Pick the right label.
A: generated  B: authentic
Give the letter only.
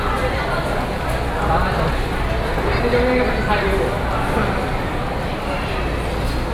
B